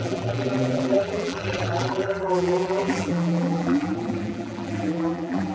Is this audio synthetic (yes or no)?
yes